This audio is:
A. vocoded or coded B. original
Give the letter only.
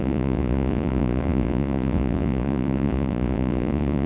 A